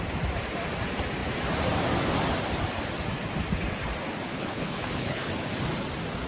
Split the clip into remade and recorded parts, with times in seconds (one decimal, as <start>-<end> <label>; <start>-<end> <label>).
0.0-4.3 recorded; 4.3-5.3 remade; 5.3-6.3 recorded